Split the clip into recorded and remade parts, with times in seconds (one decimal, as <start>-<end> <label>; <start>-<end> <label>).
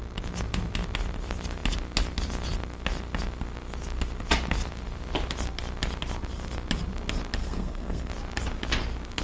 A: 0.0-7.4 recorded; 7.4-8.1 remade; 8.1-9.2 recorded